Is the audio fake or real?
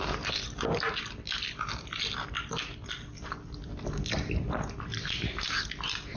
real